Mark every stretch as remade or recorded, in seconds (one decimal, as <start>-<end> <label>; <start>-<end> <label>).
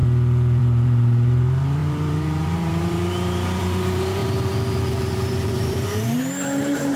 0.0-0.6 recorded; 0.6-4.2 remade; 4.2-5.0 recorded; 5.0-7.0 remade